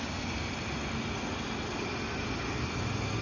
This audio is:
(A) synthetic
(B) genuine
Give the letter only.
B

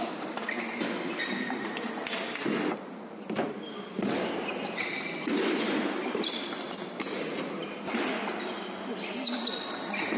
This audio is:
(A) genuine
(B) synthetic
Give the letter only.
A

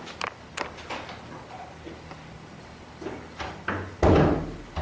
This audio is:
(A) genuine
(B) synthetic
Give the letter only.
A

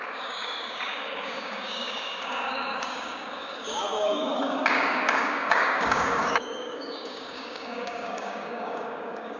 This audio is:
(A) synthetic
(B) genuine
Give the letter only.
A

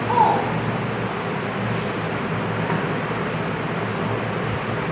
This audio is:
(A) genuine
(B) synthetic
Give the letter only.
A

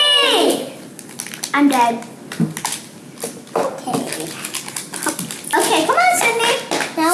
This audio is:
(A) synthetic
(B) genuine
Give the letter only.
B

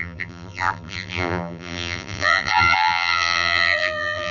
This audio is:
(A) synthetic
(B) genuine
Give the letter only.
A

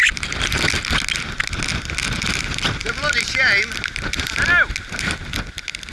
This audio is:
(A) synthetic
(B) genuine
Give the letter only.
B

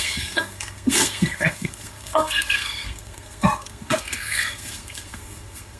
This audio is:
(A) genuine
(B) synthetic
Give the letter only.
B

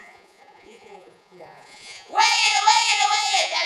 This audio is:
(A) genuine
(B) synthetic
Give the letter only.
B